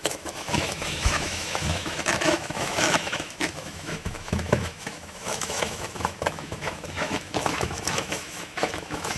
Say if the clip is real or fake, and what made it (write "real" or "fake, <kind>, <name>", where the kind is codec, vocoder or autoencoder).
fake, autoencoder, DAC-VAE